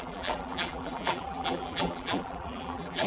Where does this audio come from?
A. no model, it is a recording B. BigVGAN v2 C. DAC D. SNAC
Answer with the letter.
B